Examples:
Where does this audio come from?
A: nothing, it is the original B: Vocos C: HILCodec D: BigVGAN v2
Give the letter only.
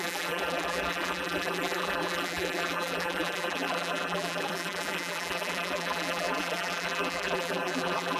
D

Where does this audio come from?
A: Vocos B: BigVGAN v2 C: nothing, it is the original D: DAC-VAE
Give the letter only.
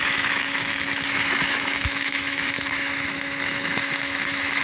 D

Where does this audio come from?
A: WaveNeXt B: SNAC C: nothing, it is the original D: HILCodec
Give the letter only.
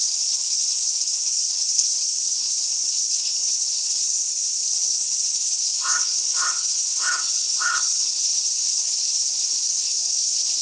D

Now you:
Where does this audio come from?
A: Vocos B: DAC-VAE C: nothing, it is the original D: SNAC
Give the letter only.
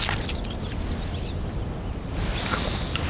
C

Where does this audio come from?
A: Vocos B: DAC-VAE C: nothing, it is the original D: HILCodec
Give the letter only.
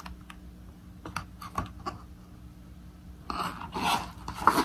C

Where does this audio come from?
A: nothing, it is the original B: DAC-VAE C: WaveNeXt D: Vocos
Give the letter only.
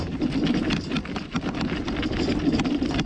A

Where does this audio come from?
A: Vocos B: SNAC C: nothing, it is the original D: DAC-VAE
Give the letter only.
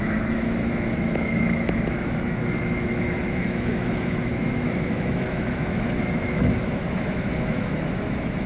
D